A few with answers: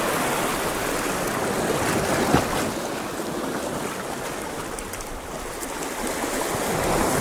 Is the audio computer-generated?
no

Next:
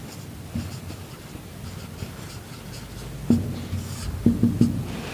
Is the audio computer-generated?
no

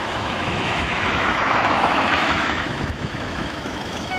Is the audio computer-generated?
yes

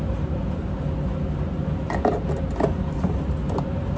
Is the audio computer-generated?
no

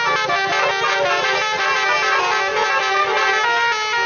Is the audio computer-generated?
no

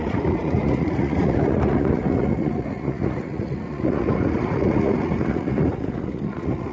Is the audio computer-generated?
yes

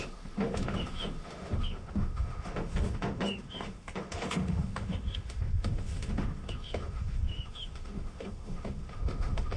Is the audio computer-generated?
yes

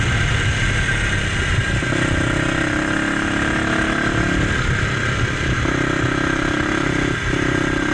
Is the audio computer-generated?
no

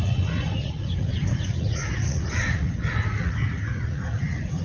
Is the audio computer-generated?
yes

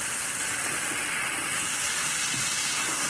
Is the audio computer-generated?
no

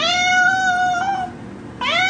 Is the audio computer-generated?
no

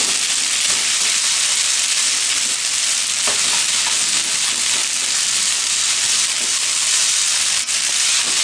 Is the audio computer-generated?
no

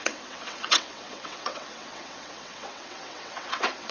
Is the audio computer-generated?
yes